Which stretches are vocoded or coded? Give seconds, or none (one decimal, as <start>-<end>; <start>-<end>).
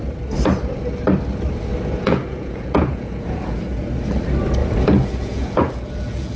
1.7-3.9; 4.6-6.4